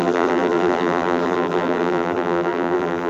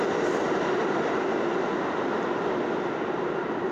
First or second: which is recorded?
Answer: second